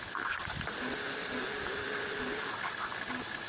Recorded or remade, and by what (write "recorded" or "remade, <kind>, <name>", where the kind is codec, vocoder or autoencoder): recorded